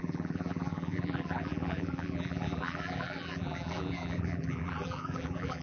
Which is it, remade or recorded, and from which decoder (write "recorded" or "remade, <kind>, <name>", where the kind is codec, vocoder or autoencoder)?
remade, vocoder, BigVGAN v2